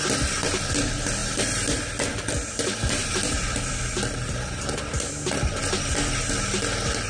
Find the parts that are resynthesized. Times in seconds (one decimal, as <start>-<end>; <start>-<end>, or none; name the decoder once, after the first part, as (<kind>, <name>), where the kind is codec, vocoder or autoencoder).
1.2-5.5 (vocoder, BigVGAN v2)